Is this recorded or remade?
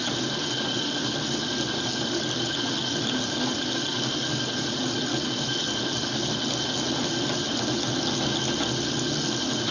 recorded